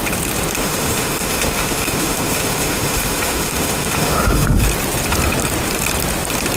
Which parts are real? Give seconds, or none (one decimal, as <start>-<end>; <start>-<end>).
0.0-0.6; 4.6-6.6